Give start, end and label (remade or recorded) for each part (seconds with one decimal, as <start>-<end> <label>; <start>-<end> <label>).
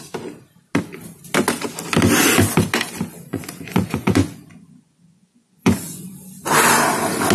0.0-3.3 recorded; 3.3-6.1 remade; 6.1-7.3 recorded